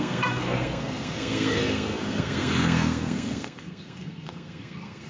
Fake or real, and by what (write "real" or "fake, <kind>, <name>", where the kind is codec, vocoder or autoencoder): fake, codec, SNAC